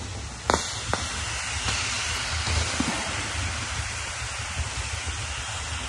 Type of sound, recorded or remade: recorded